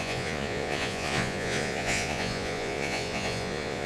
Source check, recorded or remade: remade